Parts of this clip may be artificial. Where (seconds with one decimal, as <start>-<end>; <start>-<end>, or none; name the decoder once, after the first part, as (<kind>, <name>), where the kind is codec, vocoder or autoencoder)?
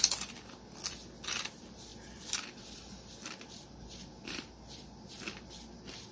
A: none